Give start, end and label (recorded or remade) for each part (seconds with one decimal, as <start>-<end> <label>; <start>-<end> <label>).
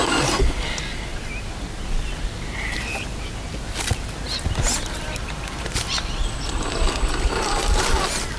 0.0-8.4 recorded